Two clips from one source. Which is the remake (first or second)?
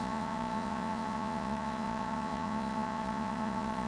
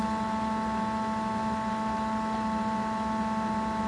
first